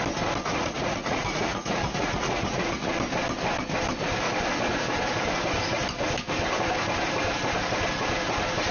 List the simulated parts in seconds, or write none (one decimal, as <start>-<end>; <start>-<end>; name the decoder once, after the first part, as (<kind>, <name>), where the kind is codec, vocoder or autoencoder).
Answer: 0.5-2.9 (vocoder, Vocos)

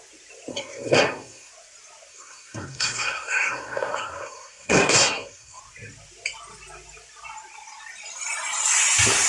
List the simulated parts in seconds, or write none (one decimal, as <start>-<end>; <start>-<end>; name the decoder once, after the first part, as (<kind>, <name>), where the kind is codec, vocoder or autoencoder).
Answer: 0.5-1.5 (codec, SNAC); 2.1-5.6

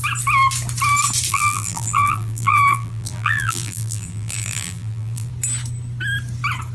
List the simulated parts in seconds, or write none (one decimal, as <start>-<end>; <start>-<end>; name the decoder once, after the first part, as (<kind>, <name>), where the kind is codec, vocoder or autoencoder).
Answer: 1.3-5.3 (vocoder, BigVGAN v2)

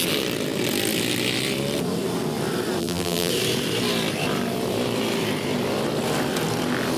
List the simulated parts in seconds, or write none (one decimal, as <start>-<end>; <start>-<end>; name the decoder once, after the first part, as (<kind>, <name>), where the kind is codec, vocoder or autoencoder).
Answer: 2.8-3.3 (vocoder, BigVGAN v2)

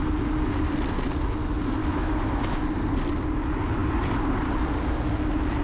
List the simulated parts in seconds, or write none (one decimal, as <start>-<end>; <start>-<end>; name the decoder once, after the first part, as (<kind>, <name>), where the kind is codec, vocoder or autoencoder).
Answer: 1.8-2.6 (autoencoder, DAC-VAE)

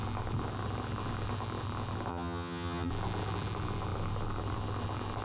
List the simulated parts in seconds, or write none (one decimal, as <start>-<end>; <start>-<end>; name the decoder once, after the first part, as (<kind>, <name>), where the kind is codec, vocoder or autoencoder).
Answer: 2.1-2.9 (vocoder, HiFi-GAN)

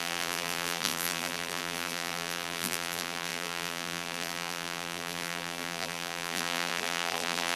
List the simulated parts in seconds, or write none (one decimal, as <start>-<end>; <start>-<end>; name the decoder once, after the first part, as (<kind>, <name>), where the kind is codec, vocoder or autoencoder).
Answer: 0.0-7.6 (vocoder, BigVGAN v2)

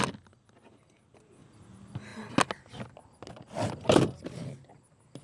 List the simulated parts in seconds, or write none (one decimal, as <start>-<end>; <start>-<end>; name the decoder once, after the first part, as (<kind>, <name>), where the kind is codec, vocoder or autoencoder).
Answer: none